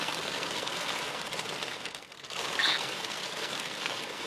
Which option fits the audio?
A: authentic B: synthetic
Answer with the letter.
B